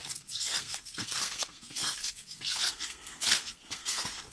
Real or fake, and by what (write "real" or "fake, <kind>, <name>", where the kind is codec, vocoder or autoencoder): fake, codec, SNAC